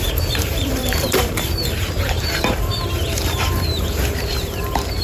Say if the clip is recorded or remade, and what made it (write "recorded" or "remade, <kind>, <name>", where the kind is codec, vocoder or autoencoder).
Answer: remade, vocoder, BigVGAN v2